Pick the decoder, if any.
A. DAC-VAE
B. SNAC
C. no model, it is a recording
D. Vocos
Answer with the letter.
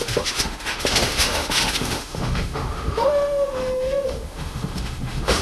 A